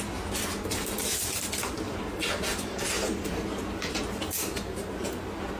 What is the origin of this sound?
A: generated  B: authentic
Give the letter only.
B